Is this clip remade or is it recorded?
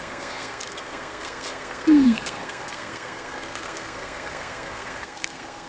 remade